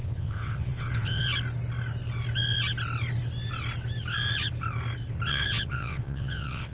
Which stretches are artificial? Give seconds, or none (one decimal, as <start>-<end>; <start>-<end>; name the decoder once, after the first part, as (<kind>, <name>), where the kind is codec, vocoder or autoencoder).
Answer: 0.0-1.3 (vocoder, WaveNeXt); 5.3-6.7

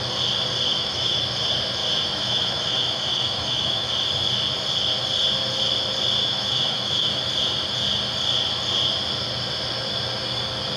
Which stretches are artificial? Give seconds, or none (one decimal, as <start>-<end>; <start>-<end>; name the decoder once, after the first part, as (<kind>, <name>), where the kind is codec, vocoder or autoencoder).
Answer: 0.7-1.2 (autoencoder, DAC-VAE); 1.8-3.9; 6.2-7.2